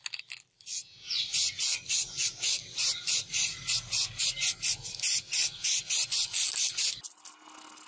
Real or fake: real